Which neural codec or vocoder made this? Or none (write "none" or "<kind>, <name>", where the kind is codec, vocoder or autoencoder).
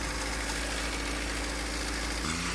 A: none